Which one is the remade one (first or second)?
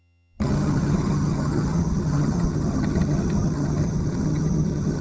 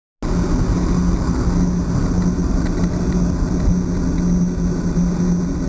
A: first